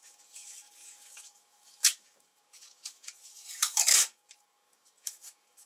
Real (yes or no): no